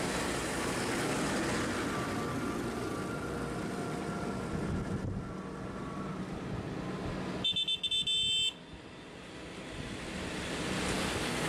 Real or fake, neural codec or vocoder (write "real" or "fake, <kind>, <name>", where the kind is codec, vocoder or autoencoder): real